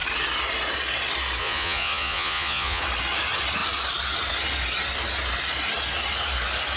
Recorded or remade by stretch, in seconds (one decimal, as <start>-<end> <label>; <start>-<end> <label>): 0.0-1.4 recorded; 1.4-2.8 remade; 2.8-6.8 recorded